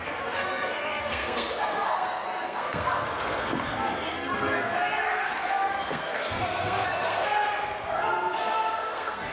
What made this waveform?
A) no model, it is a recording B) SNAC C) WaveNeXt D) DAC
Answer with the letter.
B